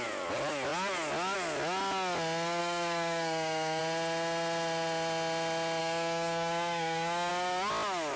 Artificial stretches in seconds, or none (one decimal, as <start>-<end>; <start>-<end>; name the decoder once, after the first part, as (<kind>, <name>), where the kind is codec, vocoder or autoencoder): 2.6-3.8 (codec, DAC); 5.8-7.3